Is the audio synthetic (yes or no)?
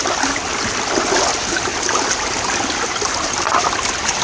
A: no